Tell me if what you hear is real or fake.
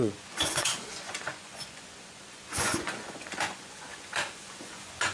fake